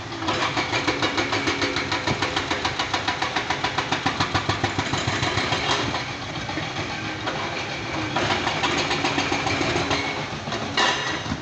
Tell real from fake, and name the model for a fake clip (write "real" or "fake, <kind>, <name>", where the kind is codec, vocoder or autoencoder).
real